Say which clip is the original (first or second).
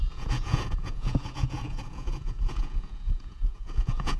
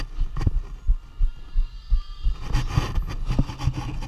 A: second